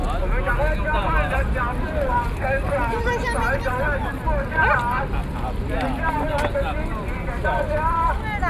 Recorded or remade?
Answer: recorded